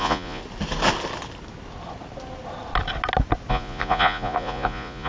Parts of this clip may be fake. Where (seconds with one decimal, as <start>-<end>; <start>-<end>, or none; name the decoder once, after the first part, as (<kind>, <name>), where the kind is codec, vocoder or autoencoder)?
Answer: 0.0-0.4 (vocoder, Vocos); 3.5-5.1